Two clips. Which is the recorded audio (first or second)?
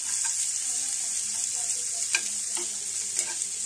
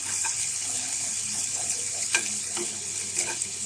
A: first